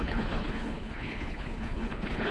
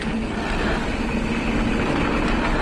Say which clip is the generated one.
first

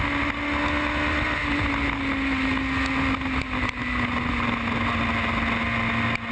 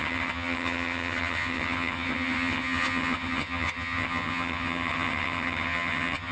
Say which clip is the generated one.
second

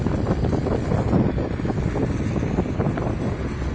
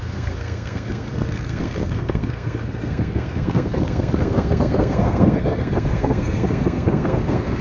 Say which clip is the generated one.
second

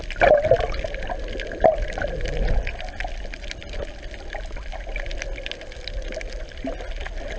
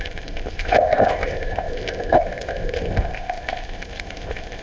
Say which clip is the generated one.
second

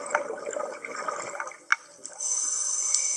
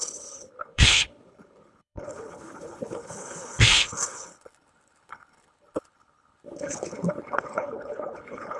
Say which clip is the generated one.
second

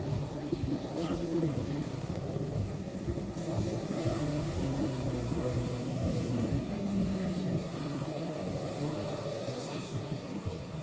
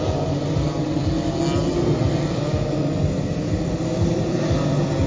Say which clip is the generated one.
first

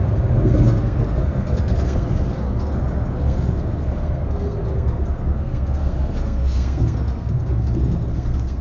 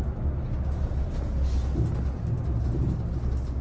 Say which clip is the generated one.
first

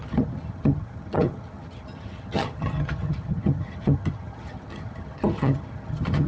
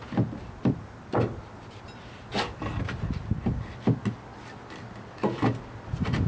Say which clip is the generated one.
first